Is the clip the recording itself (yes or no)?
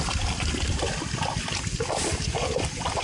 yes